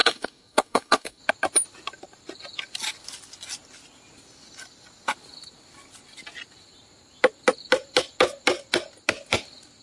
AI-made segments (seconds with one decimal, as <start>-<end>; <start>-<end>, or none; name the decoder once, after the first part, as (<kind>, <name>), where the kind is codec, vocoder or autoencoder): 0.0-1.2 (codec, DAC)